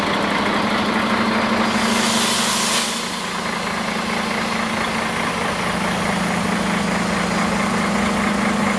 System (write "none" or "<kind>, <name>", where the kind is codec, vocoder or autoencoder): none